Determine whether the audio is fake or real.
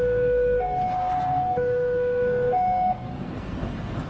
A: fake